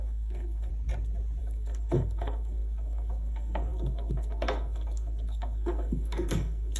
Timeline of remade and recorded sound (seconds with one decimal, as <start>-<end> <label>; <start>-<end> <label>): 0.0-0.7 remade; 0.7-1.4 recorded; 1.4-6.8 remade